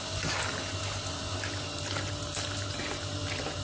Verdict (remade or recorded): recorded